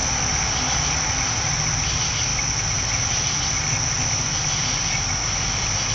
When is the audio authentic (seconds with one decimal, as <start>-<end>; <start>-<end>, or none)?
0.0-5.9